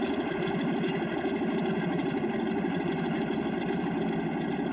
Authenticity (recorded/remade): recorded